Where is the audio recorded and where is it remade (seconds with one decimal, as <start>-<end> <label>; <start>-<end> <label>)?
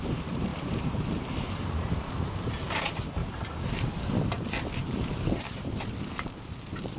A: 0.0-3.2 remade; 3.2-4.8 recorded; 4.8-7.0 remade